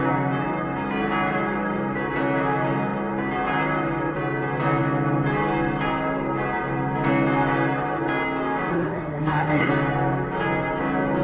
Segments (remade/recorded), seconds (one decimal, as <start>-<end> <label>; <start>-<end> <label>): 0.0-8.7 recorded; 8.7-9.7 remade; 9.7-11.2 recorded